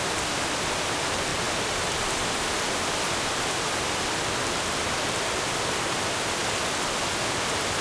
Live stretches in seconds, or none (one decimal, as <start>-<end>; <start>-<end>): 0.0-7.8